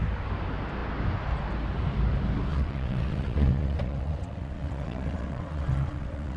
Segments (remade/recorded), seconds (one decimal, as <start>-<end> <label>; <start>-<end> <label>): 0.0-2.5 recorded; 2.5-6.4 remade